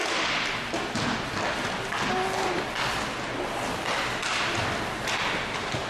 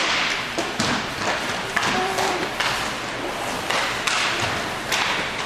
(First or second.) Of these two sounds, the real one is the first